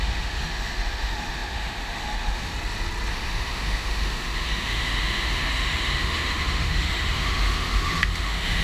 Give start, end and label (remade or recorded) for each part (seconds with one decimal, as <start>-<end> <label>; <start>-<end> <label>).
0.0-2.5 remade; 2.5-3.1 recorded; 3.1-8.6 remade